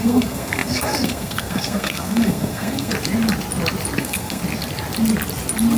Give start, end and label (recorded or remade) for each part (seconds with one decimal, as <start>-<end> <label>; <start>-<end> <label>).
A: 0.0-2.9 remade; 2.9-4.0 recorded; 4.0-4.4 remade; 4.4-5.8 recorded